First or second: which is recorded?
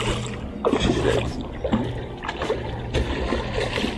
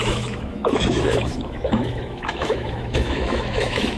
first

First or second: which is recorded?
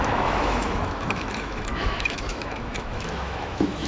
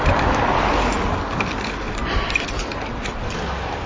second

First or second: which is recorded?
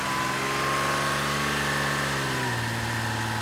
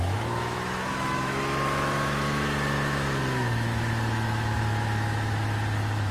first